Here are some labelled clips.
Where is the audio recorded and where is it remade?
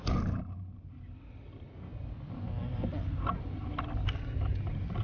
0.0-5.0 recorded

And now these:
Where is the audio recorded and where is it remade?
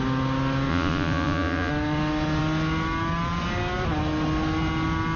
0.0-0.7 recorded; 0.7-1.7 remade; 1.7-5.2 recorded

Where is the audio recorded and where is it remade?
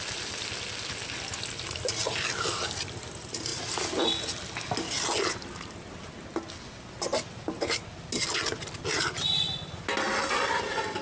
0.0-11.0 recorded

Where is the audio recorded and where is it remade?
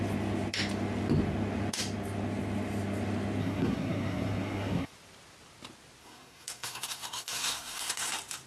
0.0-3.4 recorded; 3.4-4.9 remade; 4.9-6.0 recorded; 6.0-8.1 remade; 8.1-8.5 recorded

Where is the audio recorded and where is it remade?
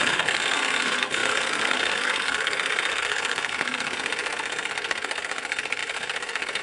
0.0-6.6 remade